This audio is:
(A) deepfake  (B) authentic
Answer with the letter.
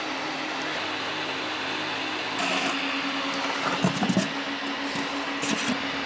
B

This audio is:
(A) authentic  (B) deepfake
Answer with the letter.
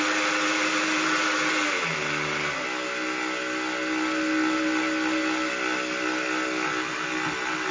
A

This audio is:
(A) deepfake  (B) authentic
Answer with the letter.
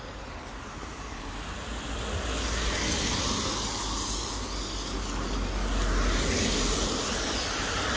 B